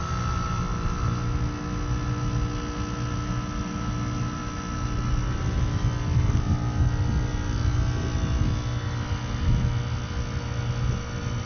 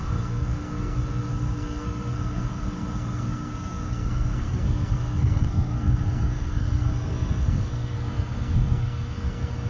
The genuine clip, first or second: first